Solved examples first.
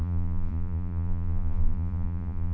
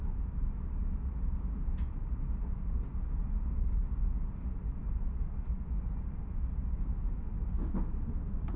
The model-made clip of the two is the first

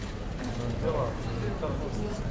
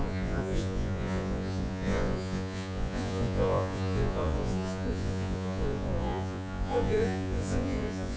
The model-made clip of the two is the second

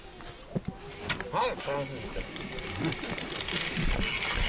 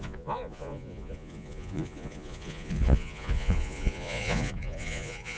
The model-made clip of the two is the second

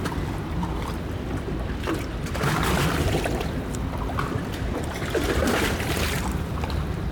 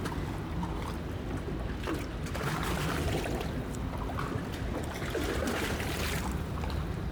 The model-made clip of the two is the first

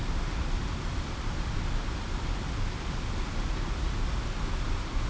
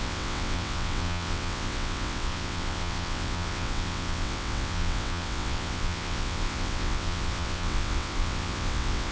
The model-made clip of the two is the second